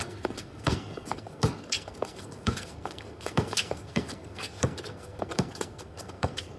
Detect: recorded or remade remade